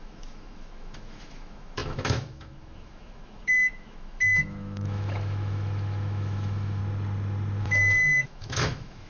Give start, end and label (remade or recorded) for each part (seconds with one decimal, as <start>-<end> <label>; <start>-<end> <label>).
0.0-6.8 remade; 6.8-7.6 recorded; 7.6-9.1 remade